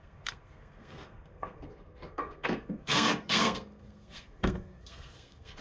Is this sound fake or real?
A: fake